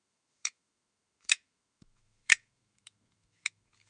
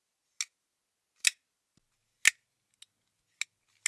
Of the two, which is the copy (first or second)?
first